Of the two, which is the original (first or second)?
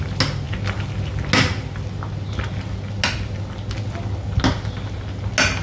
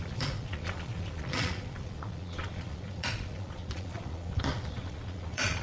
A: first